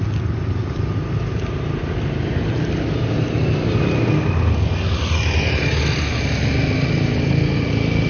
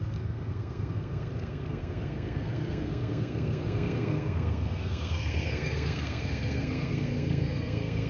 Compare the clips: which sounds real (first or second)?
first